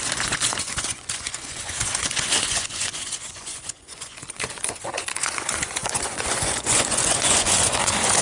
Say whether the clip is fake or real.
fake